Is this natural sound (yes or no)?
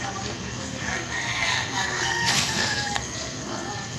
no